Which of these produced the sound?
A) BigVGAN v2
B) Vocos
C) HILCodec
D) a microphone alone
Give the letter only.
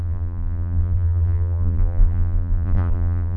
A